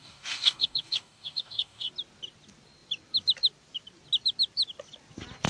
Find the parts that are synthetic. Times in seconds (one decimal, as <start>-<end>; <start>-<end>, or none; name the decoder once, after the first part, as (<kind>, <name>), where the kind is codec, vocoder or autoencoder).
0.0-1.9 (codec, DAC)